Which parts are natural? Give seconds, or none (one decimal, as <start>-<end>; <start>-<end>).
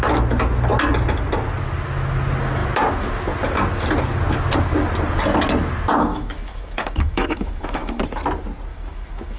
0.0-6.1; 8.0-8.7